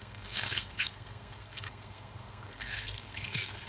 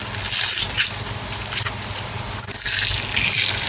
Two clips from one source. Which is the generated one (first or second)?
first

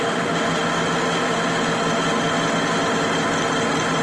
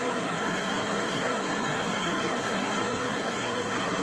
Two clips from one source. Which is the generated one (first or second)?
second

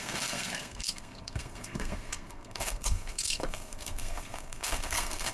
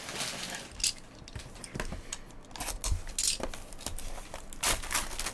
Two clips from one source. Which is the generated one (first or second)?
first